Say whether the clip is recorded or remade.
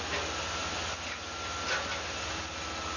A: recorded